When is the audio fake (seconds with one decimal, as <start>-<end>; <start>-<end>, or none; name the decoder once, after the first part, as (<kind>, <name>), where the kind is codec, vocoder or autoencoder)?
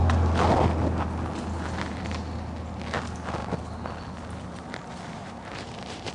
5.2-6.1 (vocoder, BigVGAN v2)